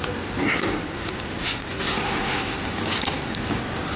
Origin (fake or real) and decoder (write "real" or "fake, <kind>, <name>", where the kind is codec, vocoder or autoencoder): real